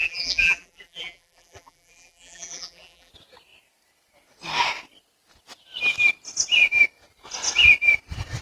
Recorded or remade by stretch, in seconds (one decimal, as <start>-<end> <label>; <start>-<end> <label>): 0.0-3.1 remade; 3.1-8.4 recorded